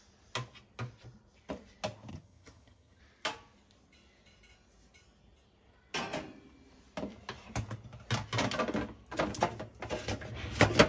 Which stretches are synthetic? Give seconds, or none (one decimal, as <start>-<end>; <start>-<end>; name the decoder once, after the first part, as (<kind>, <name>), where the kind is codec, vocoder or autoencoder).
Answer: 2.1-3.0 (vocoder, HiFi-GAN)